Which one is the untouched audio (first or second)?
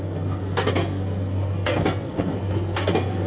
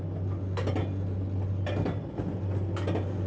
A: second